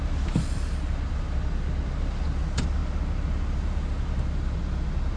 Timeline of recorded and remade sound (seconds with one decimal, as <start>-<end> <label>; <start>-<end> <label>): 0.0-5.2 recorded